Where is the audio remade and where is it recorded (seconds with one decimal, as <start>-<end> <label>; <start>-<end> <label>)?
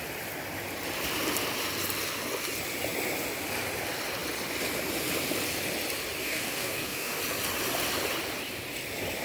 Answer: 0.0-6.2 recorded; 6.2-7.2 remade; 7.2-9.2 recorded